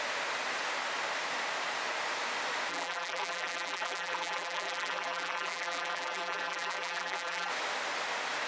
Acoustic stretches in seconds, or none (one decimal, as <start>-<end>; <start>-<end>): 0.0-2.7; 7.5-8.5